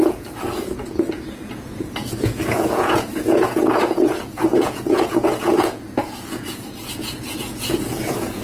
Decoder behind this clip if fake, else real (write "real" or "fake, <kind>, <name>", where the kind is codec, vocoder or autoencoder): fake, vocoder, Vocos